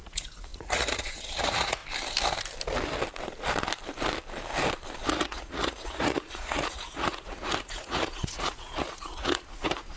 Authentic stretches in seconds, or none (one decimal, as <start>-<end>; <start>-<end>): 1.8-5.0